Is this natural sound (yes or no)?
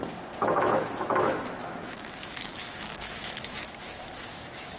no